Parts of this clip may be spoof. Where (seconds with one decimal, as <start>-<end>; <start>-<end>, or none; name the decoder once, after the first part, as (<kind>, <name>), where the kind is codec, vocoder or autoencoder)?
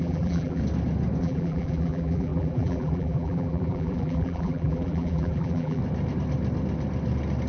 0.0-0.6 (vocoder, BigVGAN v2); 1.2-5.8